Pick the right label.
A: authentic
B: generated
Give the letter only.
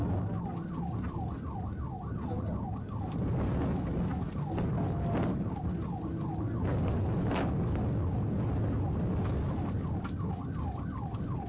A